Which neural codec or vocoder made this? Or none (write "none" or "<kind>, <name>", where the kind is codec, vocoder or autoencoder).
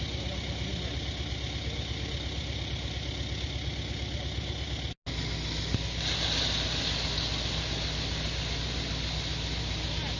none